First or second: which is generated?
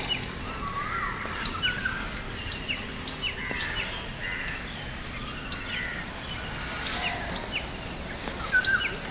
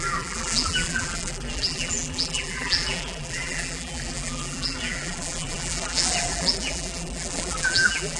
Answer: second